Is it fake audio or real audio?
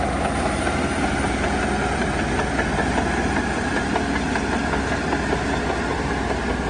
real